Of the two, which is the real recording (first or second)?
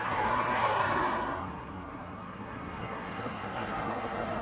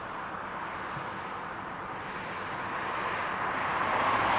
second